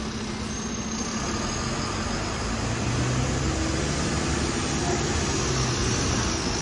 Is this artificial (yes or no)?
no